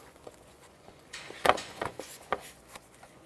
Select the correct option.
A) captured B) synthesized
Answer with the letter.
B